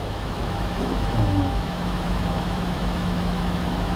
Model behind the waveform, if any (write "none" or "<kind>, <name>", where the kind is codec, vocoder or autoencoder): autoencoder, DAC-VAE